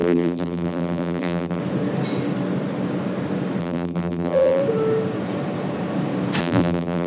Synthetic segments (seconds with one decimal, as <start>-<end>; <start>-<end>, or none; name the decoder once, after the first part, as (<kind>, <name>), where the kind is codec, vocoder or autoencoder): 0.0-1.6 (vocoder, BigVGAN v2); 3.6-4.6; 6.4-7.1